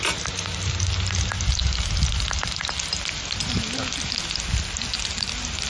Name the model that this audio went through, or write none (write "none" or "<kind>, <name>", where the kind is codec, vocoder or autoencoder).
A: none